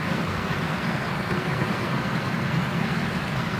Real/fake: fake